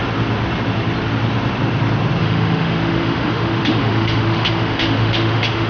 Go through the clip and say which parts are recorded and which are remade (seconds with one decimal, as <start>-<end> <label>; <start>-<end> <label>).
0.0-2.2 recorded; 2.2-5.7 remade